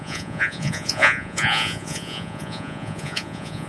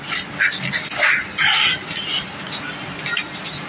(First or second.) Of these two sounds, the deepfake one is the first